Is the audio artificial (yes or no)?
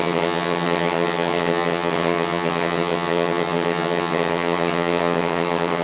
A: yes